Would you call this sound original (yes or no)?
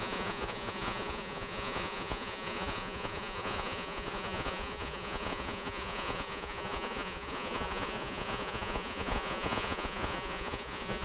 no